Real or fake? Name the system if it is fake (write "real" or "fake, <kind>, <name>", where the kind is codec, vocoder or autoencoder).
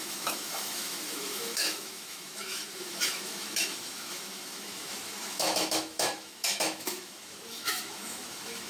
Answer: fake, autoencoder, DAC-VAE